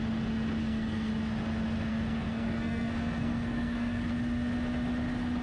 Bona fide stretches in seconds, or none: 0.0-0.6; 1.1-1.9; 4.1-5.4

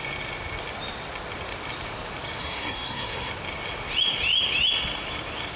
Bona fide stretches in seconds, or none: 0.0-2.4; 3.3-5.6

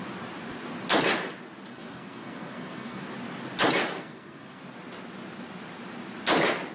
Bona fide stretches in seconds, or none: 0.0-1.7; 3.0-3.9; 4.6-6.7

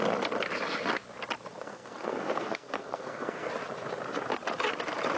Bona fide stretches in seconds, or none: 0.0-1.5; 3.5-5.2

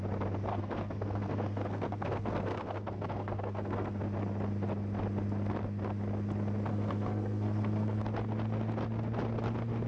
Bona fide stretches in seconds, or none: 0.0-0.5; 4.0-6.7; 8.0-9.9

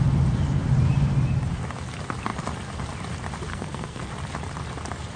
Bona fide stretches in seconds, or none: 0.0-3.5; 4.1-5.2

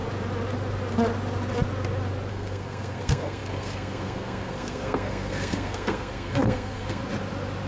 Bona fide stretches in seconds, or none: 0.0-2.3; 7.0-7.7

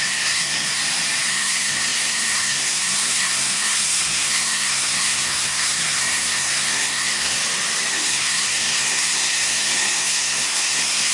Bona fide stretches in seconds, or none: 0.8-1.3; 7.4-7.9